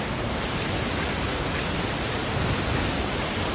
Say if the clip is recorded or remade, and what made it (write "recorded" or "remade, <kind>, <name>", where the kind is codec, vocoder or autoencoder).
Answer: recorded